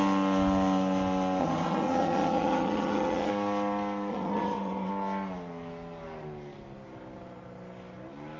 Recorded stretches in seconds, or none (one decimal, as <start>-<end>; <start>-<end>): 0.0-1.4; 3.3-4.1; 4.9-8.4